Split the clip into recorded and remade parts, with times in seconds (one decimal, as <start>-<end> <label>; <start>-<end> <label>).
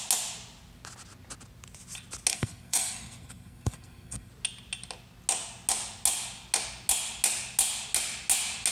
0.0-2.3 recorded; 2.3-4.3 remade; 4.3-8.7 recorded